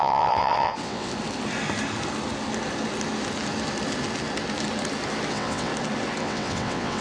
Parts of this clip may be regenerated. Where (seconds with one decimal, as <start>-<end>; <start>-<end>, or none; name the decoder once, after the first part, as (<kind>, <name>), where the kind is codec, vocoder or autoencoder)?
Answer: 0.0-1.1 (vocoder, WaveNeXt); 5.3-5.7; 6.2-7.0